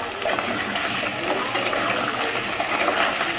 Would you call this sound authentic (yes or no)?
yes